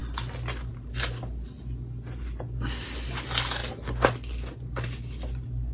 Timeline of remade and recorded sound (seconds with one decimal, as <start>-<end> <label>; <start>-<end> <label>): 0.0-5.7 recorded